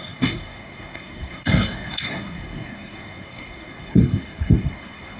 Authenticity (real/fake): fake